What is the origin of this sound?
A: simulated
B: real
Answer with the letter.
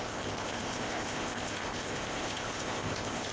A